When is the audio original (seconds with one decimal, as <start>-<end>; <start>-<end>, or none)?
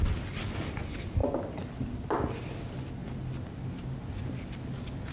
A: 0.0-5.1